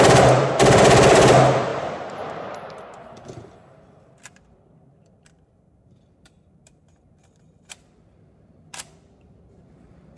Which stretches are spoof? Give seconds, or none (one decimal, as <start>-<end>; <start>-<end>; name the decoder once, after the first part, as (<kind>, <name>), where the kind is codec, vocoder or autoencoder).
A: 0.0-1.7 (vocoder, BigVGAN v2); 2.6-10.2